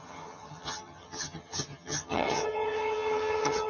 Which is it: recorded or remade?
remade